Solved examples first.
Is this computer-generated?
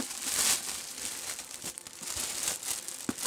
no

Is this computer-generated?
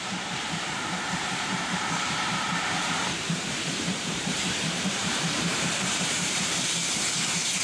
yes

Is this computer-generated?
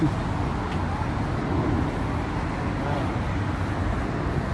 no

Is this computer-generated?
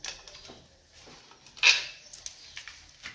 no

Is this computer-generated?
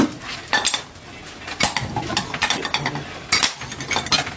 no